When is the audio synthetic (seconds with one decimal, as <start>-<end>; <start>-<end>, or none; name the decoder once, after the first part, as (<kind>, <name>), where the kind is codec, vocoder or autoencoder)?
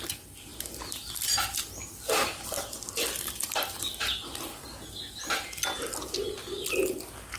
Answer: none